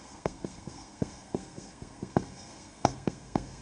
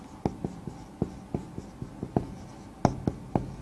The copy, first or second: first